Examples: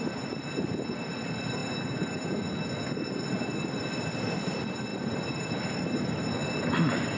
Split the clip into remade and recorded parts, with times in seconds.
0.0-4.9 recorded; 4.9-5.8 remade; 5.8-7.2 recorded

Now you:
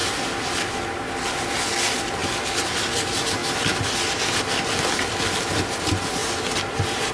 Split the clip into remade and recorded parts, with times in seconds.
0.0-7.1 recorded

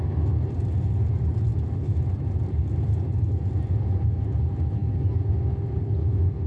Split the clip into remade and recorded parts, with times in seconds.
0.0-6.5 recorded

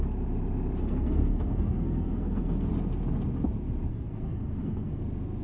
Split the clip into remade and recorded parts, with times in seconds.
0.0-0.8 recorded; 0.8-2.7 remade; 2.7-3.9 recorded; 3.9-5.0 remade; 5.0-5.4 recorded